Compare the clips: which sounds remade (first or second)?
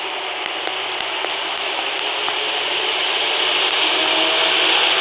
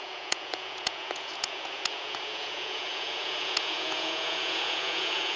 second